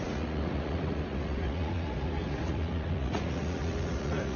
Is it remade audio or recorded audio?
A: remade